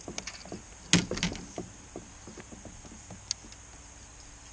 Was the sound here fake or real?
real